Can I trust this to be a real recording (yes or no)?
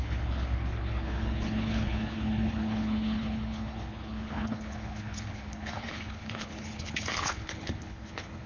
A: no